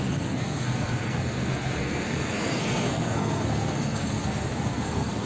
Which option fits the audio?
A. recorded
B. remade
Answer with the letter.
B